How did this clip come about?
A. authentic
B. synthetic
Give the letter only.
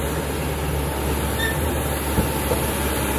A